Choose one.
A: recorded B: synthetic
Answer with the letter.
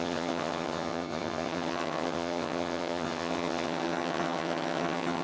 B